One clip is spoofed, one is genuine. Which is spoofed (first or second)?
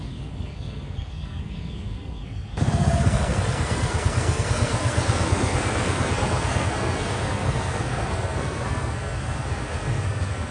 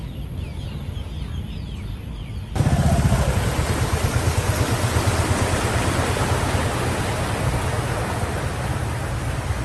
first